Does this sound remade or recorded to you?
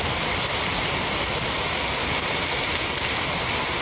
recorded